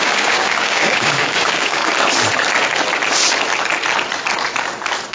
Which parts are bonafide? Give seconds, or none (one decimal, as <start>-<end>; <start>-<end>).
1.8-5.1